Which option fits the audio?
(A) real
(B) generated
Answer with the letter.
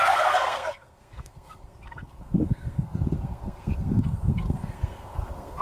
B